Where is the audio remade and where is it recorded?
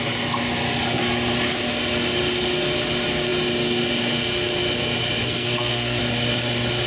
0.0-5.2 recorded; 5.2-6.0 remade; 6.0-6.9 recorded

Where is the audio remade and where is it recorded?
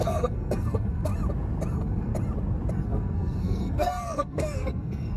0.0-1.1 remade; 1.1-1.7 recorded; 1.7-2.1 remade; 2.1-2.7 recorded; 2.7-5.2 remade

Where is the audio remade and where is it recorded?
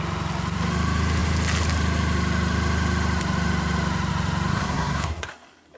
0.0-4.5 recorded; 4.5-5.3 remade; 5.3-5.8 recorded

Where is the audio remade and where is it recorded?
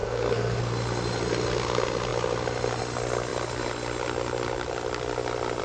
0.0-0.6 remade; 0.6-5.6 recorded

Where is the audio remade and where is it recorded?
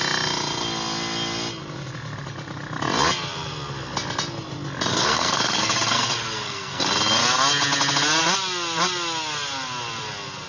0.0-4.9 recorded; 4.9-6.9 remade; 6.9-10.5 recorded